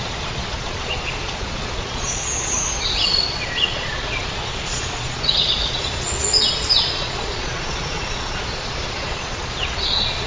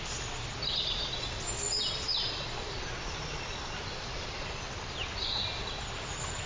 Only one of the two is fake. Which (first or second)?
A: first